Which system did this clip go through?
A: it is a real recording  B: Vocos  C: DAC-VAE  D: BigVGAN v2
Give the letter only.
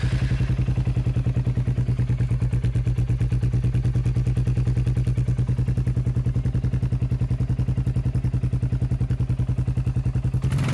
A